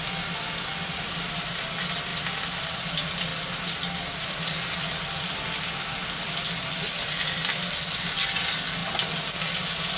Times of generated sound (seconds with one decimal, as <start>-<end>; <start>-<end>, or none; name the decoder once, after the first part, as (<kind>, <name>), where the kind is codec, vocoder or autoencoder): none